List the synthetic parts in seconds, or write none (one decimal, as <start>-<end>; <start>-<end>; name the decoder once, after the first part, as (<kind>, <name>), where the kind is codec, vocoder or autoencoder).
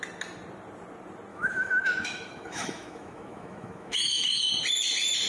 1.3-4.5 (autoencoder, DAC-VAE)